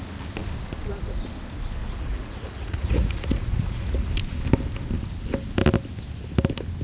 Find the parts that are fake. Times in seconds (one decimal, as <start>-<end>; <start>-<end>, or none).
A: 1.8-4.1